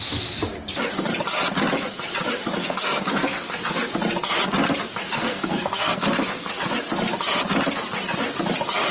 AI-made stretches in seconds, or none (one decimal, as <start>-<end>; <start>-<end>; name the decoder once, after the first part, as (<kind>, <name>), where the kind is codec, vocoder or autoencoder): 2.6-3.9 (codec, SNAC); 5.0-6.5